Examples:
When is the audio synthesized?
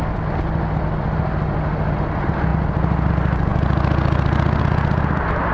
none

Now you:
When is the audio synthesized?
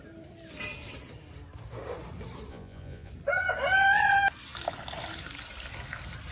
2.5-3.1 (vocoder, Vocos)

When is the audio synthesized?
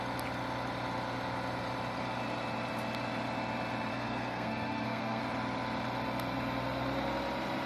3.9-5.2 (codec, SNAC)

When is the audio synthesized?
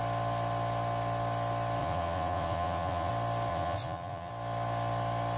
1.8-3.1 (vocoder, Vocos); 3.5-4.3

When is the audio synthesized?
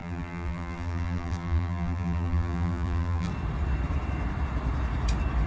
0.0-3.3 (vocoder, BigVGAN v2)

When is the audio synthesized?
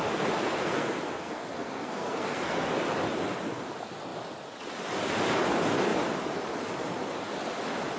0.6-2.7 (codec, SNAC)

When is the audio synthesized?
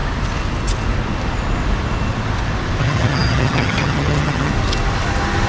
2.8-4.5 (vocoder, HiFi-GAN)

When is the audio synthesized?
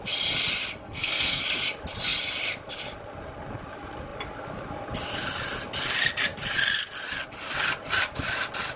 0.8-1.4 (codec, SNAC)